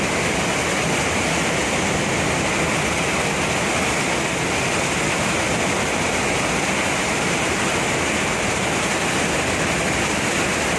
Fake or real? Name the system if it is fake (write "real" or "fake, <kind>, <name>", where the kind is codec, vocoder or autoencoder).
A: real